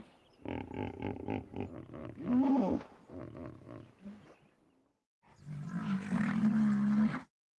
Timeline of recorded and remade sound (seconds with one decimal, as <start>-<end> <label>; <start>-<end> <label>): 0.0-2.0 recorded; 2.0-4.0 remade; 4.0-7.6 recorded